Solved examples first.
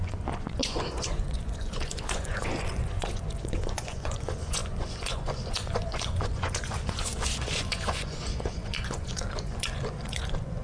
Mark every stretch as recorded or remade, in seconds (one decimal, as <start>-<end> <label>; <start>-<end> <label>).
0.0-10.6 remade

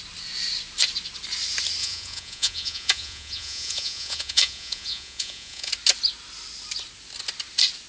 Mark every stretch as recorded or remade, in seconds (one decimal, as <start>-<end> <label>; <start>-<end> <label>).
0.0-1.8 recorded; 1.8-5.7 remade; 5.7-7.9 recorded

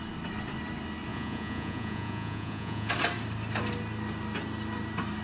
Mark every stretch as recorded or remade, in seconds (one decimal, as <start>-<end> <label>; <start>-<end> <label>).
0.0-1.1 recorded; 1.1-2.9 remade; 2.9-5.2 recorded

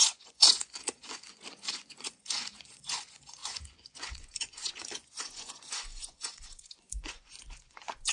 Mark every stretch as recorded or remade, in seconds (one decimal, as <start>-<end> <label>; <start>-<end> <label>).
0.0-8.1 remade

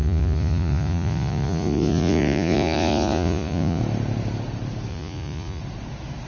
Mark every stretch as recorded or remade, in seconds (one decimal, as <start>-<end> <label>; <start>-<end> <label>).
0.0-3.8 remade; 3.8-4.9 recorded; 4.9-5.6 remade; 5.6-6.3 recorded

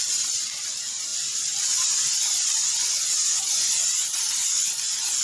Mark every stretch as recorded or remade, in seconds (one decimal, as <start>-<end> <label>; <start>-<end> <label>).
0.0-2.8 recorded; 2.8-3.7 remade; 3.7-5.2 recorded

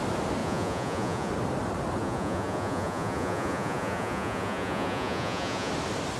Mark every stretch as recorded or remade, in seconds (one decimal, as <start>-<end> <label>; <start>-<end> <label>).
0.0-0.4 recorded; 0.4-1.3 remade; 1.3-2.0 recorded; 2.0-5.7 remade; 5.7-6.2 recorded

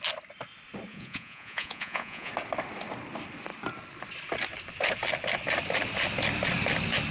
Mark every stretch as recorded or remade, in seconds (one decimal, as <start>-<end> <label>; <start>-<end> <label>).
0.0-0.9 recorded; 0.9-2.3 remade; 2.3-7.1 recorded